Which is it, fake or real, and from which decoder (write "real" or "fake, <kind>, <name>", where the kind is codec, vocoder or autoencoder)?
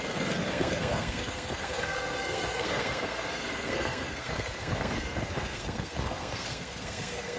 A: fake, codec, SNAC